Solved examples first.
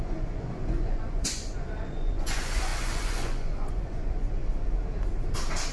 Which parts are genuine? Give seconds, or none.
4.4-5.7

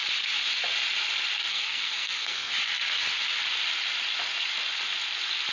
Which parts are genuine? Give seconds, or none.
0.0-1.5; 2.5-5.5

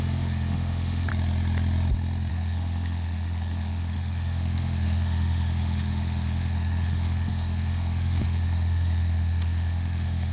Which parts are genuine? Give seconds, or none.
1.1-2.3

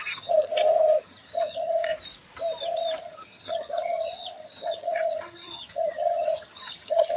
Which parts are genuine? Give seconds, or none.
0.5-1.0; 1.9-3.0

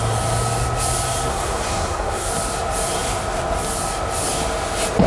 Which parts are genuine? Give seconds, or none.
0.0-1.3; 2.3-5.1